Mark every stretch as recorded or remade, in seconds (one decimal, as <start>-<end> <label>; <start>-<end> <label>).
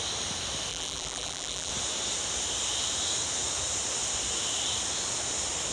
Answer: 0.0-0.7 recorded; 0.7-1.7 remade; 1.7-5.7 recorded